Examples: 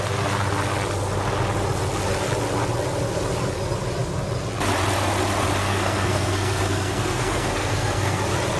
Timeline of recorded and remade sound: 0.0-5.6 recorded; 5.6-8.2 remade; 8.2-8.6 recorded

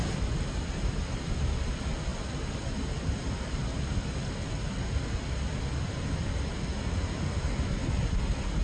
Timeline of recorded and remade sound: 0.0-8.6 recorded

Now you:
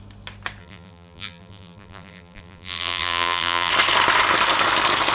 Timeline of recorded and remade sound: 0.0-0.6 recorded; 0.6-3.7 remade; 3.7-5.1 recorded

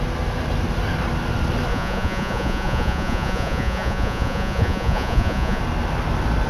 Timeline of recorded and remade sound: 0.0-1.7 recorded; 1.7-5.6 remade; 5.6-6.5 recorded

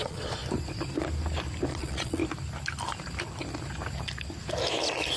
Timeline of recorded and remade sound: 0.0-0.4 remade; 0.4-1.7 recorded; 1.7-2.2 remade; 2.2-5.2 recorded

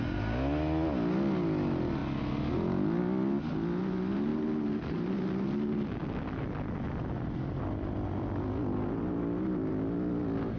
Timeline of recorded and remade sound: 0.0-10.6 recorded

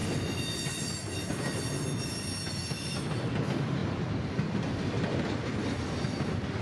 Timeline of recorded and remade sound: 0.0-6.6 recorded